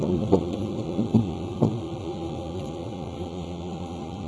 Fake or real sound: fake